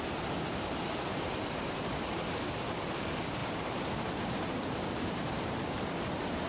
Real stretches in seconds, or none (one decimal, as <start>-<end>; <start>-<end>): 0.0-1.1; 2.4-3.4